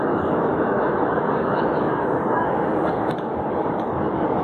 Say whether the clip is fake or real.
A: fake